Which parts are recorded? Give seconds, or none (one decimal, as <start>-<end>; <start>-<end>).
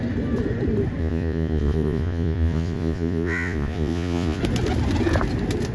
0.0-1.0; 4.4-5.7